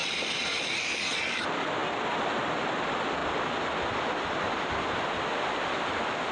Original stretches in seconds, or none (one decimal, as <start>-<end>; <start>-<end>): 1.4-6.3